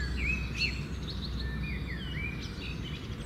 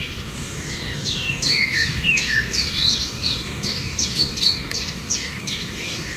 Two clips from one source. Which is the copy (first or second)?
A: second